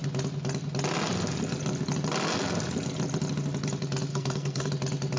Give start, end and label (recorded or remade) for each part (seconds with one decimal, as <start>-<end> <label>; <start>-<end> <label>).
0.0-4.1 recorded; 4.1-4.7 remade; 4.7-5.2 recorded